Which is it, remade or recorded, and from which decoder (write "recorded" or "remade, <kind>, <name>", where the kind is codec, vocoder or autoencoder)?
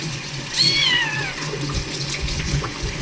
remade, vocoder, Vocos